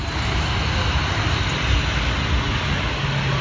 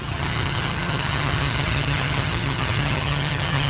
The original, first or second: first